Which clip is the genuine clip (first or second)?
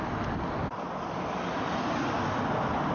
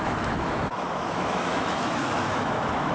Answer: first